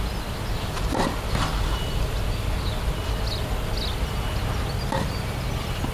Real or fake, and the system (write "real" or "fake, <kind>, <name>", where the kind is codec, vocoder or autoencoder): real